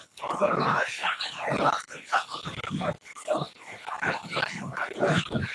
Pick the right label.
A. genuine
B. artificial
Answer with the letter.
B